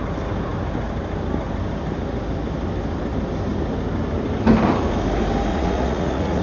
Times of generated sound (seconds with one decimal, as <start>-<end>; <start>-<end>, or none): 5.5-6.4